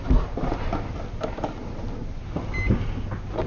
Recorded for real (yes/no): yes